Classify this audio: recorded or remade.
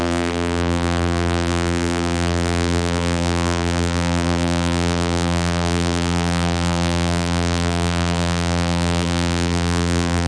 remade